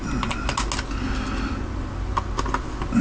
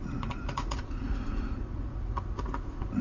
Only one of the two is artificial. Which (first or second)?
second